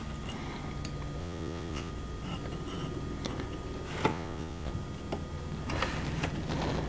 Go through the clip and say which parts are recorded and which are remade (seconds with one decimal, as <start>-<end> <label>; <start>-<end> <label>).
0.0-1.2 recorded; 1.2-1.9 remade; 1.9-4.1 recorded; 4.1-4.7 remade; 4.7-6.9 recorded